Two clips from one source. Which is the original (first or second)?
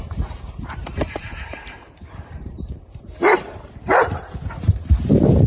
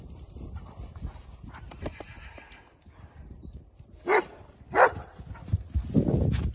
second